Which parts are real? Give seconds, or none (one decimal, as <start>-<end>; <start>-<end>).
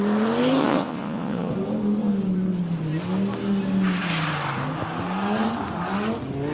0.0-0.6; 1.5-6.5